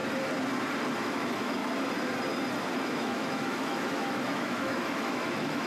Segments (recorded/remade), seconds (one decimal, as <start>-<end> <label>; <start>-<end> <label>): 0.0-1.0 recorded; 1.0-1.6 remade; 1.6-2.9 recorded; 2.9-5.7 remade